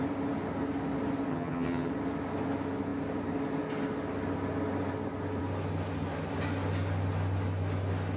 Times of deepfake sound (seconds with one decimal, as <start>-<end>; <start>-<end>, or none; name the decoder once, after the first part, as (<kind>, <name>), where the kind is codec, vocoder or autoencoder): 1.3-1.9 (vocoder, HiFi-GAN)